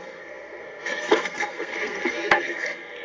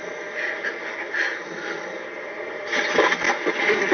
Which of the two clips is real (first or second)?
second